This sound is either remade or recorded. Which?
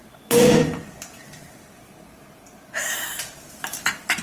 remade